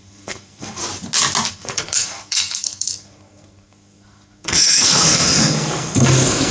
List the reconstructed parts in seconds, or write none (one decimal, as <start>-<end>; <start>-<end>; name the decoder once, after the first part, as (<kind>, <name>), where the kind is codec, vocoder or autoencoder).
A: 0.0-0.8 (codec, SNAC); 1.5-6.5